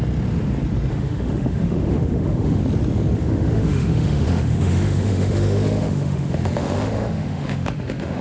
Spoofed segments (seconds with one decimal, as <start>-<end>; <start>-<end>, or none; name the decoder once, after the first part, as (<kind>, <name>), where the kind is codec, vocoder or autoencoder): 0.9-2.6 (autoencoder, DAC-VAE); 3.2-8.2